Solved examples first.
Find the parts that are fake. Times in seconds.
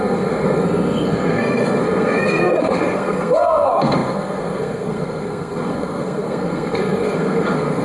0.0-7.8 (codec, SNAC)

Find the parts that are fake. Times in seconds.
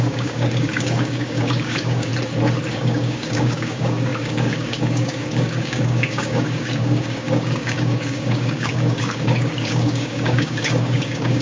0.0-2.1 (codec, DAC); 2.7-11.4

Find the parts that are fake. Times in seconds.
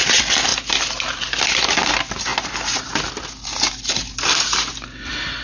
none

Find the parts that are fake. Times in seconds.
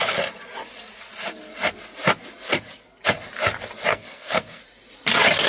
3.9-4.6 (codec, SNAC)